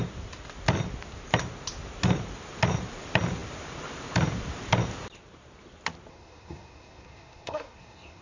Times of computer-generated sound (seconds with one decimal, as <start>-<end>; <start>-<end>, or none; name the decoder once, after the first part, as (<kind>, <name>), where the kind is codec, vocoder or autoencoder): 6.1-8.2 (codec, SNAC)